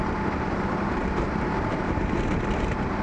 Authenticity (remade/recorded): remade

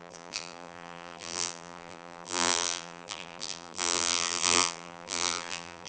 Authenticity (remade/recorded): remade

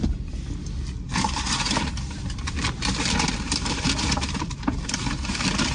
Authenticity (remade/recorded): remade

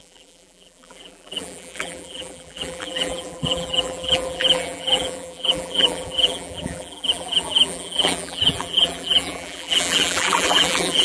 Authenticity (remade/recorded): remade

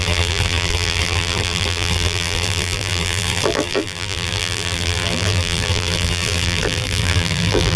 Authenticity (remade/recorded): remade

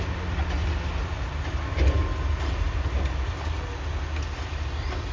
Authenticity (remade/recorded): recorded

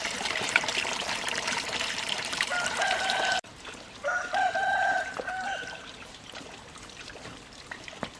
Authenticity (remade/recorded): remade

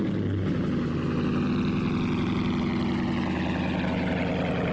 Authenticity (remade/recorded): recorded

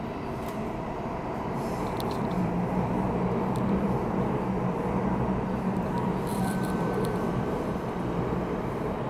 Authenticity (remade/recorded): remade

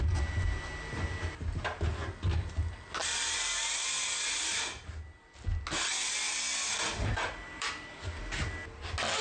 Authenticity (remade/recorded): recorded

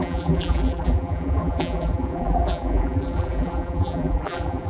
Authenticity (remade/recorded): remade